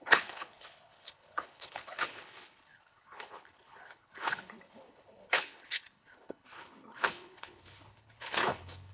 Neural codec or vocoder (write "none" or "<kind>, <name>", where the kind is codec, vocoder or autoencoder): codec, HILCodec